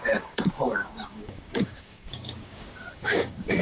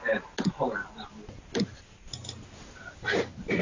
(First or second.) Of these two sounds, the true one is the second